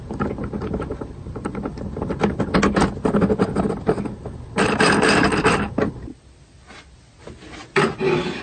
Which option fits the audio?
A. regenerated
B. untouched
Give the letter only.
B